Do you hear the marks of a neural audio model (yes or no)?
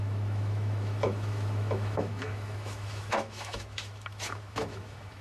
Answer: yes